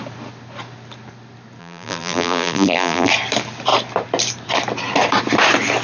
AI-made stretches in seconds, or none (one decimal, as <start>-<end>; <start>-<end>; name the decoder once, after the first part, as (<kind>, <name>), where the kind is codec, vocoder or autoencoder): 1.6-3.1 (vocoder, BigVGAN v2)